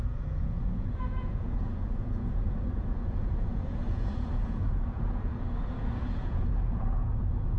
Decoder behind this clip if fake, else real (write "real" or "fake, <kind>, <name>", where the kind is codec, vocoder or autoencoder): fake, vocoder, Vocos